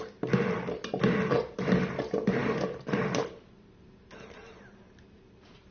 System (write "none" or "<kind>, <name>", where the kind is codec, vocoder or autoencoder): none